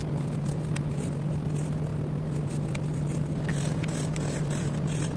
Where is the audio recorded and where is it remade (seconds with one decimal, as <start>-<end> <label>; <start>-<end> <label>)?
0.0-1.9 remade; 1.9-2.5 recorded; 2.5-5.2 remade